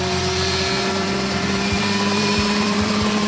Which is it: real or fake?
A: fake